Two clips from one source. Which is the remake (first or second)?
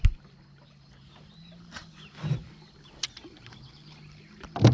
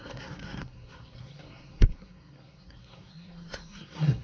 second